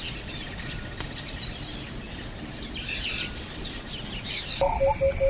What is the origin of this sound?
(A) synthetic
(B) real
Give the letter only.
B